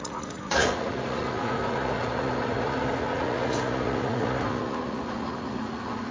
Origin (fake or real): fake